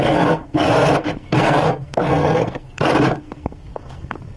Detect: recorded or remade remade